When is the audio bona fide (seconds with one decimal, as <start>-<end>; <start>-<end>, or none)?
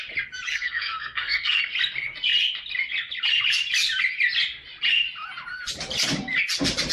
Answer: 0.0-0.5; 1.6-6.9